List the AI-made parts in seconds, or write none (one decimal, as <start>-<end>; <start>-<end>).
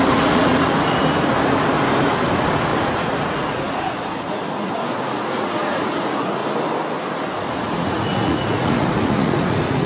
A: 0.0-1.3; 2.3-6.4; 7.3-9.9